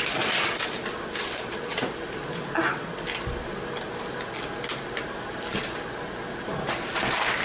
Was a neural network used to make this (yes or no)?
no